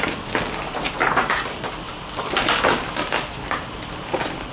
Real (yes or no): yes